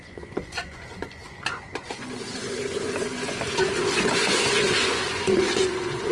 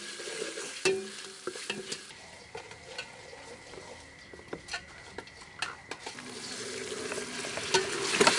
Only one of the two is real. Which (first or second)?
second